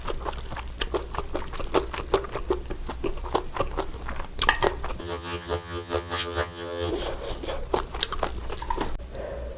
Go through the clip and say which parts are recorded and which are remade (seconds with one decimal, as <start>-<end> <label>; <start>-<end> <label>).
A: 0.0-5.0 recorded; 5.0-6.9 remade; 6.9-9.6 recorded